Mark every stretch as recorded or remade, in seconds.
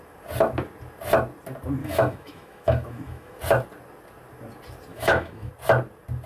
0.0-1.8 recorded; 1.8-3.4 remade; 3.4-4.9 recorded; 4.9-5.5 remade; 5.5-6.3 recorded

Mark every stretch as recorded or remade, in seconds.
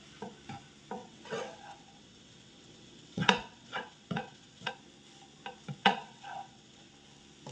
0.0-1.0 recorded; 1.0-4.7 remade; 4.7-5.8 recorded; 5.8-6.9 remade; 6.9-7.5 recorded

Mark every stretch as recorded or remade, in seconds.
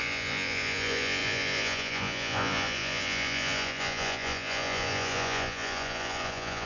0.0-6.7 remade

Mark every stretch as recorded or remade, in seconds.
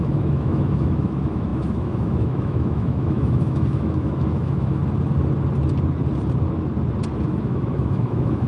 0.0-4.8 remade; 4.8-7.4 recorded; 7.4-8.5 remade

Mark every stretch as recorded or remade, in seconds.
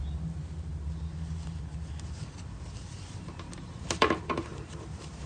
0.0-3.2 recorded; 3.2-5.3 remade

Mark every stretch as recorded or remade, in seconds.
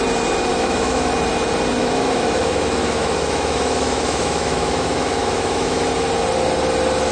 0.0-0.5 recorded; 0.5-1.1 remade; 1.1-1.8 recorded; 1.8-5.8 remade; 5.8-7.1 recorded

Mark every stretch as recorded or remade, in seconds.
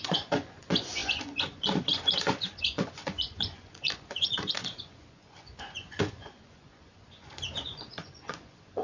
0.0-8.8 remade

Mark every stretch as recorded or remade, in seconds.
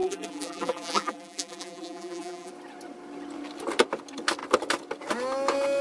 0.0-2.5 remade; 2.5-5.8 recorded